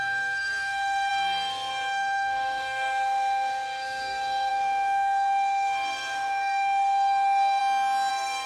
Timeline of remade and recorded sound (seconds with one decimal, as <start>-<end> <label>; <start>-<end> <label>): 0.0-7.6 remade; 7.6-8.1 recorded; 8.1-8.5 remade